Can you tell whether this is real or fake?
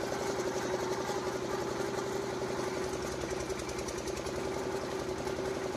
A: real